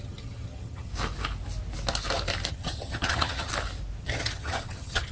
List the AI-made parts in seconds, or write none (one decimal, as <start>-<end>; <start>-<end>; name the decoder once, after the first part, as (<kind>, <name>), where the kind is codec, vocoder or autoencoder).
0.0-0.9 (vocoder, HiFi-GAN); 2.5-3.5; 4.0-5.1